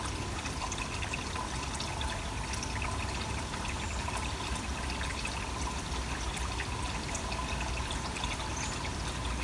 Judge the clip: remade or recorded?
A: recorded